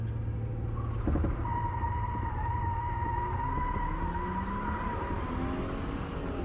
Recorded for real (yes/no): yes